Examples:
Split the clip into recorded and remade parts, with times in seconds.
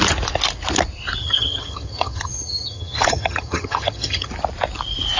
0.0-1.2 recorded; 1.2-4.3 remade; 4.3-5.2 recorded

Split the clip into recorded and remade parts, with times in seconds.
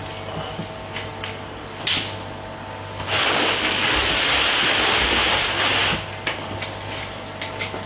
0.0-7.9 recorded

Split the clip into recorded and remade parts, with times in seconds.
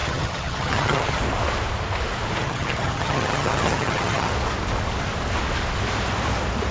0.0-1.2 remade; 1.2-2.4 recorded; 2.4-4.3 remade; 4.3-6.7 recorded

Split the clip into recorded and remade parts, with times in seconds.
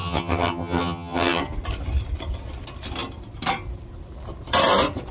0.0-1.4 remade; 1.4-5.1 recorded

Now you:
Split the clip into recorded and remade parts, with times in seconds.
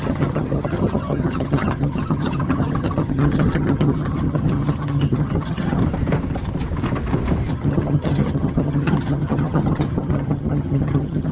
0.0-5.8 remade; 5.8-7.5 recorded; 7.5-11.3 remade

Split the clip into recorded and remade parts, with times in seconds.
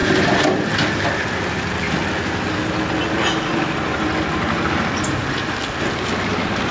0.0-6.7 recorded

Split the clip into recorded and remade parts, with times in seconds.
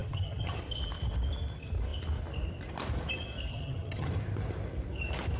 0.0-0.6 remade; 0.6-3.5 recorded; 3.5-4.1 remade; 4.1-5.4 recorded